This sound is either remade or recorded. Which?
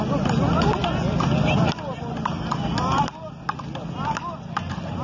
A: recorded